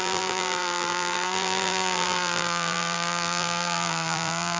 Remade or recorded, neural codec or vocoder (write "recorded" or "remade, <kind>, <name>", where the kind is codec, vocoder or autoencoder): remade, vocoder, BigVGAN v2